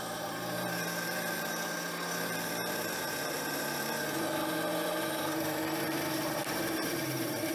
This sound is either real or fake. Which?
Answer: fake